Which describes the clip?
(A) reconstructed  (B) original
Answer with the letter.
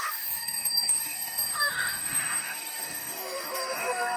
A